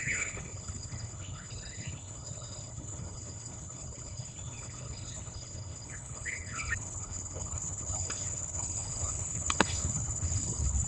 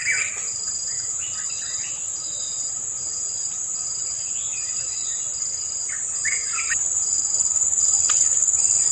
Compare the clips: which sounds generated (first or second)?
first